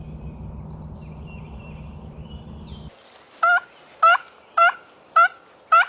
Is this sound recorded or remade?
recorded